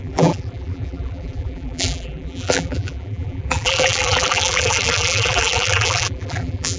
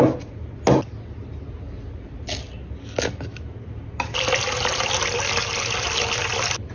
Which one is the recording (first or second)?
second